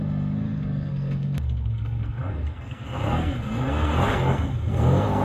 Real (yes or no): no